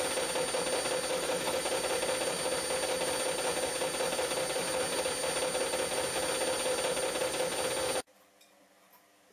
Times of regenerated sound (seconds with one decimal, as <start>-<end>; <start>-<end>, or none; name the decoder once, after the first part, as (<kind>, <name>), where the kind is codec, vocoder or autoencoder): 1.1-1.6 (autoencoder, DAC-VAE)